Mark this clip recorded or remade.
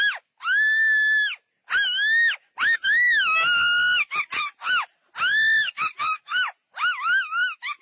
recorded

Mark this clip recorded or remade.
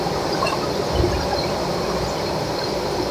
recorded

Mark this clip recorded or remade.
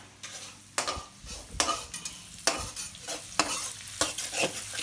recorded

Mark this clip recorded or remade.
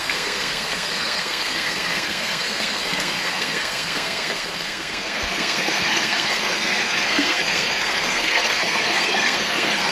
remade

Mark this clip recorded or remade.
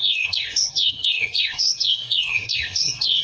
remade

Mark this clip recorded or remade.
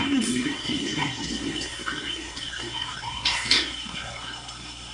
remade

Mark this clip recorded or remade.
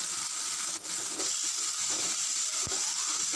recorded